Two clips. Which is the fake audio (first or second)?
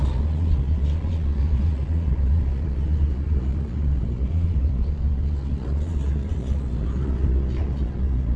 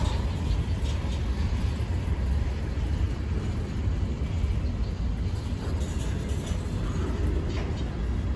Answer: first